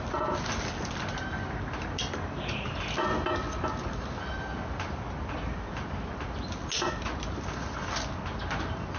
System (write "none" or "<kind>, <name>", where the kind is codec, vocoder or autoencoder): none